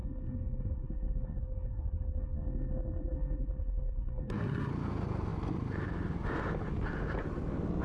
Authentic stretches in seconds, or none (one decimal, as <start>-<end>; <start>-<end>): 4.7-7.8